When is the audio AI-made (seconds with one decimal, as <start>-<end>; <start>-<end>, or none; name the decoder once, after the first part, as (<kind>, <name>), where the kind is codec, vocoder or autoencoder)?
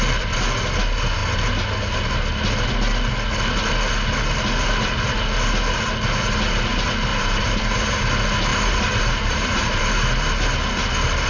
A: 7.1-8.0 (vocoder, BigVGAN v2); 8.5-9.9